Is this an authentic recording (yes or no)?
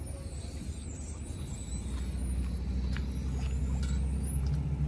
yes